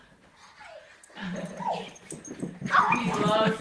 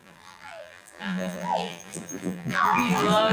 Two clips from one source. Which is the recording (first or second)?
first